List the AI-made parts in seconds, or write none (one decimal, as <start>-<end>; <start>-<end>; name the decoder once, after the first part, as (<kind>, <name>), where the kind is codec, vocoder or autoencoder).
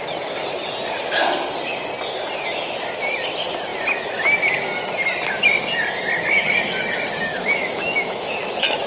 7.3-8.3 (autoencoder, DAC-VAE)